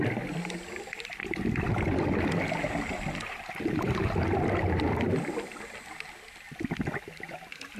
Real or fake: real